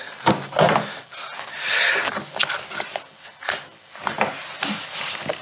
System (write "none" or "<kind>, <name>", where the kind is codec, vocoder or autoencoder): none